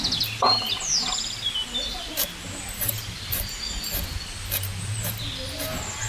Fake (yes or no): no